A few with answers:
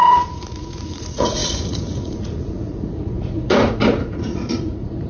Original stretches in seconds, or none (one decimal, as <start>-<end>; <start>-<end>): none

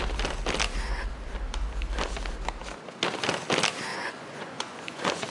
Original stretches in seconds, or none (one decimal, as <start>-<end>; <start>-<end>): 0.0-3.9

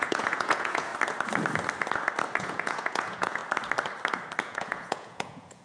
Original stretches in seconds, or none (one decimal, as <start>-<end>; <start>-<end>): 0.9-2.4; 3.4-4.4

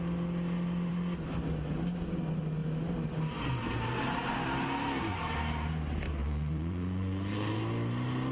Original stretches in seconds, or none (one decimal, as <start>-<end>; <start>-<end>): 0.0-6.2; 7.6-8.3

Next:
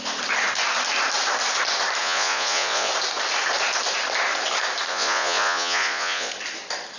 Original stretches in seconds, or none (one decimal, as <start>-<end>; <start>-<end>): 0.0-2.0; 2.9-4.9; 6.3-7.0

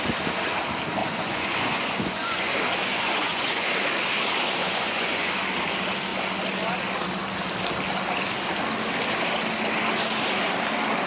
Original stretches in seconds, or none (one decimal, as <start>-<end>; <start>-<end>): 0.0-1.0; 2.5-2.9; 3.7-4.6; 5.3-11.1